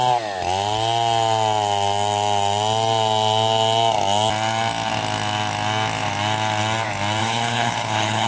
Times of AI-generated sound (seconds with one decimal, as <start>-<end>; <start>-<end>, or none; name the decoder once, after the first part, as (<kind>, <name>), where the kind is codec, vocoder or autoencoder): 7.2-8.3 (codec, HILCodec)

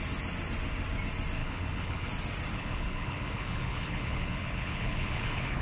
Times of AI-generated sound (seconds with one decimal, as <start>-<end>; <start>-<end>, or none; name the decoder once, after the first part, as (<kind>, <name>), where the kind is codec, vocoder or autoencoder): 1.4-2.1 (codec, HILCodec); 2.5-5.6

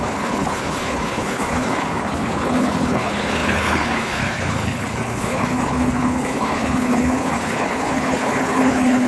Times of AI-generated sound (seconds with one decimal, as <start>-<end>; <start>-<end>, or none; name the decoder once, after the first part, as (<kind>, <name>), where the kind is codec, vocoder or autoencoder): 0.0-9.1 (codec, HILCodec)